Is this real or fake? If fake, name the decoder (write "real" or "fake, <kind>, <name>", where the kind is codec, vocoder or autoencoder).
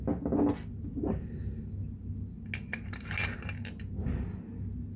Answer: real